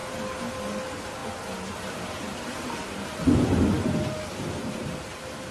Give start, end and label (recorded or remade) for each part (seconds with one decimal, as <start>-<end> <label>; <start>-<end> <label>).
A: 0.0-5.5 recorded